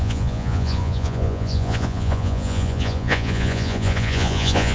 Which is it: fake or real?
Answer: fake